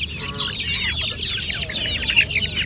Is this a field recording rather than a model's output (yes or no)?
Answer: yes